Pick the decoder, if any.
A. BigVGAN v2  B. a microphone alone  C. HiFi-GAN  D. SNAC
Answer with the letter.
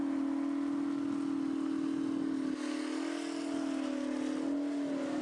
B